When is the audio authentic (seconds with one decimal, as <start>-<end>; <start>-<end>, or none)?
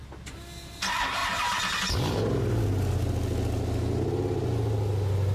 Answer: 0.0-5.3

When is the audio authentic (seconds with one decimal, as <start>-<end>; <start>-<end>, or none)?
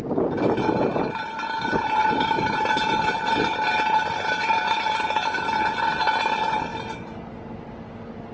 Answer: 0.0-8.3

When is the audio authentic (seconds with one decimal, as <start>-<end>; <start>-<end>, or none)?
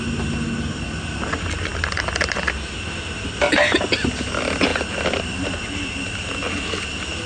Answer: 0.0-7.3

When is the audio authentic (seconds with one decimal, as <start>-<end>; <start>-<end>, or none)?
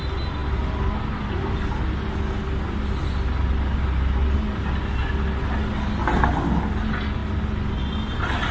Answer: 0.0-8.5